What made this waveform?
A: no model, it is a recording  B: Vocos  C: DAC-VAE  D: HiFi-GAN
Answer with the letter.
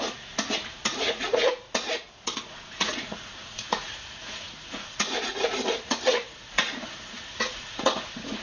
B